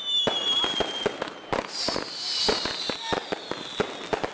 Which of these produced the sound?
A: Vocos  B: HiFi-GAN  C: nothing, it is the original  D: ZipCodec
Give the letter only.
C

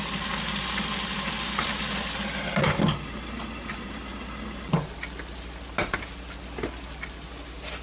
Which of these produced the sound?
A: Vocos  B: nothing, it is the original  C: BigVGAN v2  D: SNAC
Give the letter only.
B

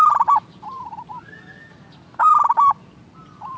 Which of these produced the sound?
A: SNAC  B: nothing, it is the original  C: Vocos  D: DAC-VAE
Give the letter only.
B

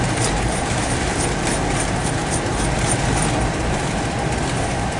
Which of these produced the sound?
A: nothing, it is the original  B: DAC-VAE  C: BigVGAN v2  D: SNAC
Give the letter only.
A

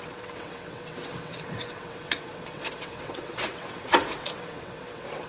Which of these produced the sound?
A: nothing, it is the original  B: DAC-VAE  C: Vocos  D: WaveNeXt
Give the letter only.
D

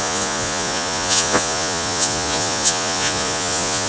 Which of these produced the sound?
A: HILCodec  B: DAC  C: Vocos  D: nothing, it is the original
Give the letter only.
C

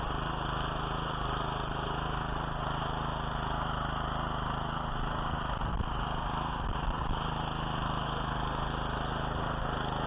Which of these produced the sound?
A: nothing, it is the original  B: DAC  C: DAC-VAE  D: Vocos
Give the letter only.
A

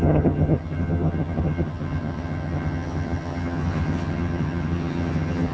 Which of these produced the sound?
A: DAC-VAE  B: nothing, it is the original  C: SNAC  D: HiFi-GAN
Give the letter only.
D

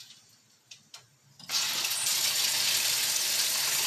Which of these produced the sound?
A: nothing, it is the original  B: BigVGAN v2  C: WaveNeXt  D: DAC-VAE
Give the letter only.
A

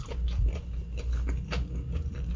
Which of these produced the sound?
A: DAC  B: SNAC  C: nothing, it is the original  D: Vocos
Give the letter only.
C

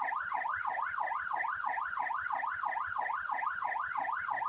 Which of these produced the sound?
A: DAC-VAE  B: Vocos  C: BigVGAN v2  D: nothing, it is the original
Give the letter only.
D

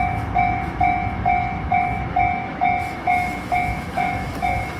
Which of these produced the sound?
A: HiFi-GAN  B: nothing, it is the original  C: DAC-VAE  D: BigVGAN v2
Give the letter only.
C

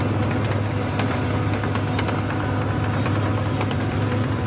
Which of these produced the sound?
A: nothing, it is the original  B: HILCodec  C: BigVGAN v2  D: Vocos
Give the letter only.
A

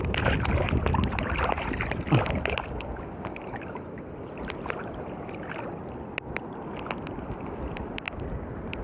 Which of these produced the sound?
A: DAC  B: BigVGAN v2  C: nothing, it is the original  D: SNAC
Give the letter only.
C